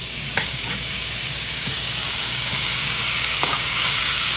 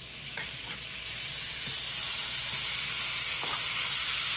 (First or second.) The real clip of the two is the second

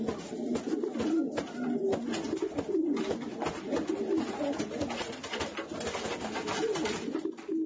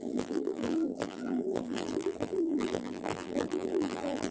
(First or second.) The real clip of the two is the first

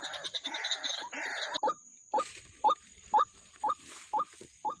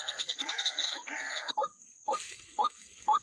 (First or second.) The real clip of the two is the first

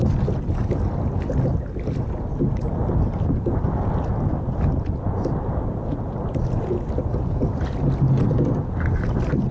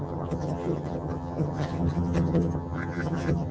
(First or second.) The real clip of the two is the first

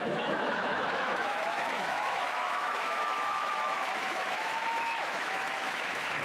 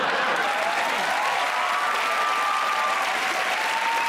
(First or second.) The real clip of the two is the second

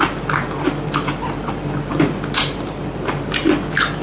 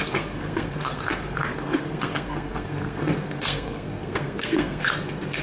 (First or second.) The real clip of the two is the first